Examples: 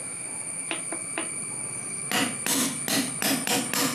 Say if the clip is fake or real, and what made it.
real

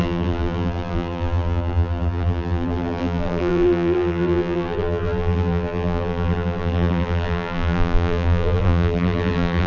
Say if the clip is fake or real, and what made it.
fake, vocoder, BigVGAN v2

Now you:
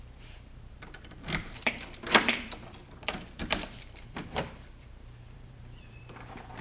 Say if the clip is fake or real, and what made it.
fake, vocoder, BigVGAN v2